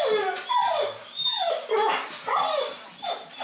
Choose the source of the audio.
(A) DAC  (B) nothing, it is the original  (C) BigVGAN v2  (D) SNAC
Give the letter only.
B